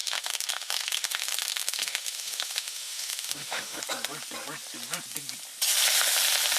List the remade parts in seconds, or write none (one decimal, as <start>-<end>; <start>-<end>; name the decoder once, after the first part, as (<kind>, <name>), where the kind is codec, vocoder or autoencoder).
0.0-3.8 (autoencoder, DAC-VAE)